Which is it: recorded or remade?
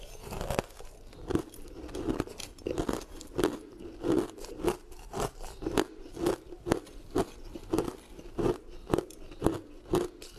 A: recorded